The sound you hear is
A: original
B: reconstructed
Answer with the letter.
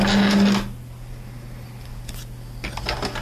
A